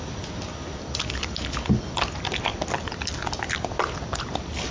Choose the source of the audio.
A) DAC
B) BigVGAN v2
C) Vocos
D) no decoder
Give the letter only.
D